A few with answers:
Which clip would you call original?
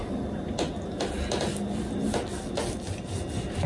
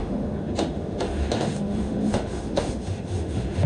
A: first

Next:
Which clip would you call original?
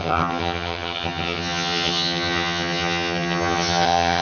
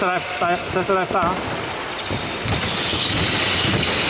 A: second